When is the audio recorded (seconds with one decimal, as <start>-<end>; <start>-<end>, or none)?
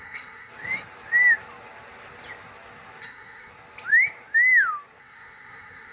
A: 0.5-3.0; 3.5-5.0